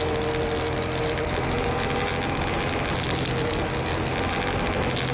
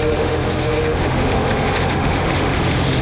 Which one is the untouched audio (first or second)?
first